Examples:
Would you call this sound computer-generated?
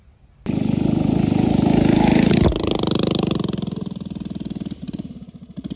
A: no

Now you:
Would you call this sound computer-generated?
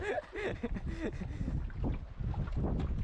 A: no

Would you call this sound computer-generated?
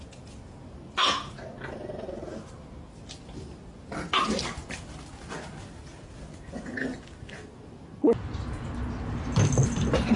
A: no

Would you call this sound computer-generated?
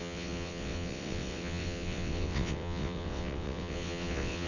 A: yes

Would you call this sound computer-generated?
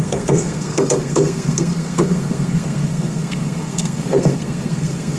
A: yes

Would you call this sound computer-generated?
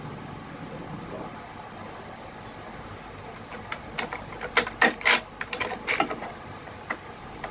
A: no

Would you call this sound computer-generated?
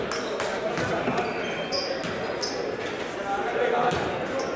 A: no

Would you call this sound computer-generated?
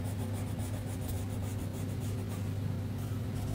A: no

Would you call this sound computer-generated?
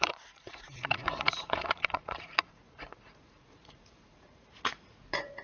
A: yes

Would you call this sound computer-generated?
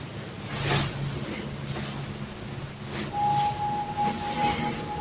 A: no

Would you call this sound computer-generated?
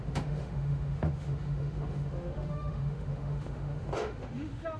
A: yes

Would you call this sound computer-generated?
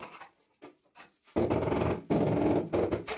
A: no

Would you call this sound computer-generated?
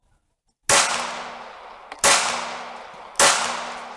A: no